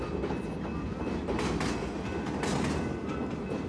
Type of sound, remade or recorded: recorded